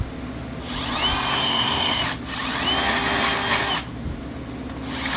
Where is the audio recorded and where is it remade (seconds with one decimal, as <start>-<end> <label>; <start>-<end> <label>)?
0.0-1.3 recorded; 1.3-2.0 remade; 2.0-5.2 recorded